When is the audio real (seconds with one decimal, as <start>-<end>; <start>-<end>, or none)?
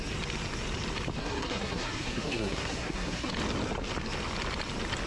0.0-1.2; 3.3-5.1